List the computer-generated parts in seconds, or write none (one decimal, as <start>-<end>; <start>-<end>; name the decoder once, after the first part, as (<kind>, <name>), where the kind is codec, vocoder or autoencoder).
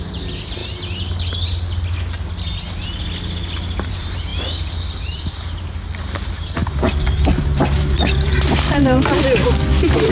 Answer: 0.0-0.6 (vocoder, BigVGAN v2); 3.9-4.3; 4.9-10.1